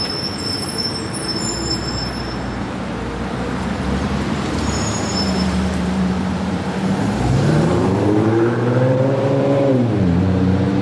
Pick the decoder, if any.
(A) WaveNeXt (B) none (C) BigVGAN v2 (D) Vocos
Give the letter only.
C